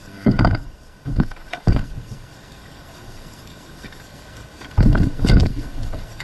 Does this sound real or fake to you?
fake